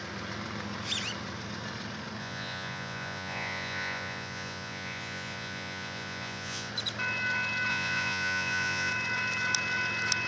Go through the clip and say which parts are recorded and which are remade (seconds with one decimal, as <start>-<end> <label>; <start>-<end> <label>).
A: 0.0-2.2 recorded; 2.2-6.7 remade; 6.7-7.7 recorded; 7.7-8.9 remade; 8.9-10.3 recorded